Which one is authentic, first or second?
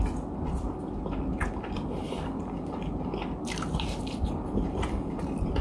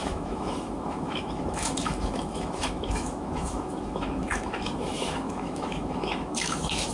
first